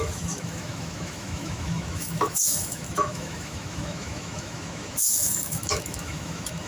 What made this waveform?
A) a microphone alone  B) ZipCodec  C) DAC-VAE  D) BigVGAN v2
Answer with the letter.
C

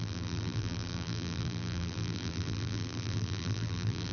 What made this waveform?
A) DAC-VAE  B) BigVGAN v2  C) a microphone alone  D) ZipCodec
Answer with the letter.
B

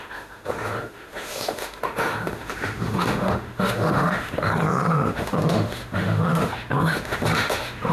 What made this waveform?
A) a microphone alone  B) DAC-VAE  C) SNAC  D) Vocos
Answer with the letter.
B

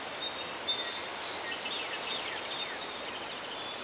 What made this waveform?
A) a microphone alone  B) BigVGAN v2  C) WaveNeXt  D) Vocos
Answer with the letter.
A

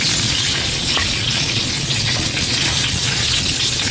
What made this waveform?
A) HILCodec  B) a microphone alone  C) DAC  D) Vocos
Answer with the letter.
D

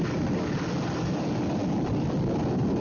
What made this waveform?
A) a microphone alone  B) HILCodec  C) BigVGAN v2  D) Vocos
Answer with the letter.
A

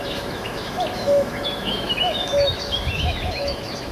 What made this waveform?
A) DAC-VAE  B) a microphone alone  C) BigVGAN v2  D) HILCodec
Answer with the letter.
A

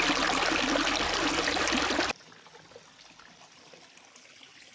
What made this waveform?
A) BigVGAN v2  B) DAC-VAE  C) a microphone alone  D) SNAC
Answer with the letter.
C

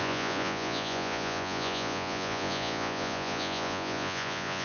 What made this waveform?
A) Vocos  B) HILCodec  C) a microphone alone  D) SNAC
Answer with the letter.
A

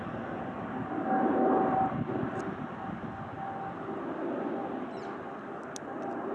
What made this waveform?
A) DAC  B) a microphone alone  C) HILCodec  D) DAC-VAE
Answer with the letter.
B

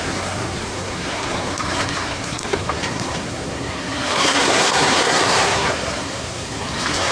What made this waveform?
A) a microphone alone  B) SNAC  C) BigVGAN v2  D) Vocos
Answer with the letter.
B